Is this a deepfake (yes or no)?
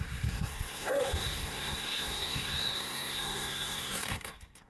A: yes